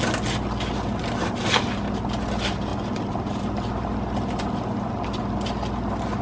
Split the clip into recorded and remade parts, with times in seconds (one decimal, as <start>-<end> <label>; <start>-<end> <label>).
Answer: 0.0-6.2 recorded